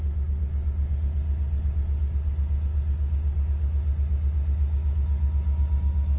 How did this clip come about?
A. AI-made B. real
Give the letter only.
B